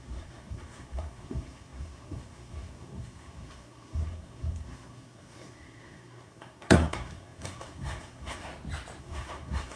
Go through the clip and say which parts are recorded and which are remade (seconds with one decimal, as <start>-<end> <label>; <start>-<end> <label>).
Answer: 0.0-8.5 remade; 8.5-9.0 recorded; 9.0-9.8 remade